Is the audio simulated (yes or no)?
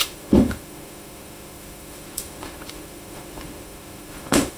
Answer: yes